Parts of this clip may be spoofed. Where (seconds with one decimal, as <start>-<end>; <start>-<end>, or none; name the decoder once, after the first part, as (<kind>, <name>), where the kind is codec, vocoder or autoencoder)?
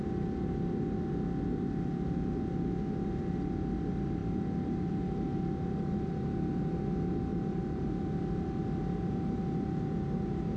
7.3-8.0 (vocoder, BigVGAN v2)